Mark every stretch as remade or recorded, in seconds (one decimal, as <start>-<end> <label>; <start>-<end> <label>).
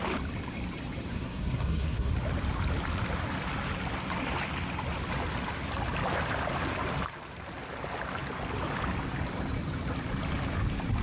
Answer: 0.0-1.1 recorded; 1.1-2.1 remade; 2.1-11.0 recorded